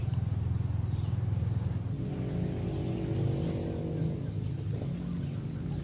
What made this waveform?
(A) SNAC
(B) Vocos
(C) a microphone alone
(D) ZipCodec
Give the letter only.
C